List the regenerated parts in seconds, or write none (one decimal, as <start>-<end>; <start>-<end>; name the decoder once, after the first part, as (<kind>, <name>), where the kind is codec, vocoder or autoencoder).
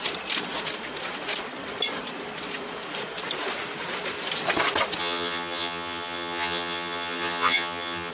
5.0-8.1 (vocoder, HiFi-GAN)